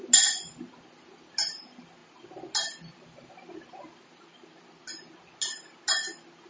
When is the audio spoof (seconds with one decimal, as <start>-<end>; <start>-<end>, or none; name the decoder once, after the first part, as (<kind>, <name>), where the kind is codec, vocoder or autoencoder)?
none